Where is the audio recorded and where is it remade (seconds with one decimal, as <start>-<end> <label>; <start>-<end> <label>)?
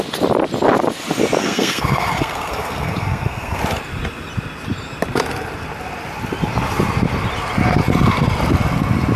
0.0-1.4 recorded; 1.4-3.6 remade; 3.6-9.2 recorded